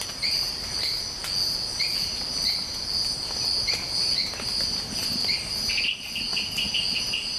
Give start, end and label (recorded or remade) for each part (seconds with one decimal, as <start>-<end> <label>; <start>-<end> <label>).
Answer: 0.0-7.4 recorded

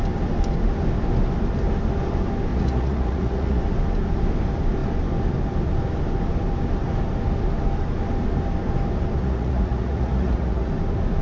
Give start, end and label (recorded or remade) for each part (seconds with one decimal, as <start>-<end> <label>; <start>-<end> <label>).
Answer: 0.0-2.5 recorded; 2.5-3.6 remade; 3.6-9.2 recorded; 9.2-10.7 remade; 10.7-11.2 recorded

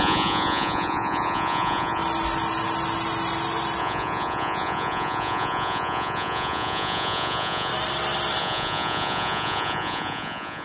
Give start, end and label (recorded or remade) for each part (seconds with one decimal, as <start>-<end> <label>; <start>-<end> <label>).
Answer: 0.0-2.0 remade; 2.0-3.8 recorded; 3.8-7.7 remade; 7.7-8.4 recorded; 8.4-10.6 remade